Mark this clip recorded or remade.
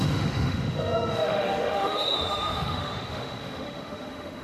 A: remade